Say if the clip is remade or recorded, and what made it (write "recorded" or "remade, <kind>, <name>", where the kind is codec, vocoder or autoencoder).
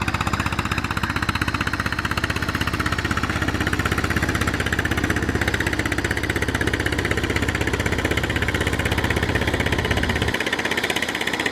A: recorded